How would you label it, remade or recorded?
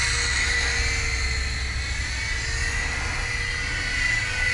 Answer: recorded